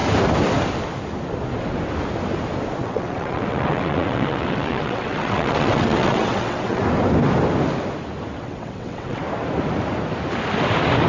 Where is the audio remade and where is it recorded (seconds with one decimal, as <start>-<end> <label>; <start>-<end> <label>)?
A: 0.0-2.8 recorded; 2.8-6.8 remade; 6.8-8.4 recorded; 8.4-9.2 remade; 9.2-11.1 recorded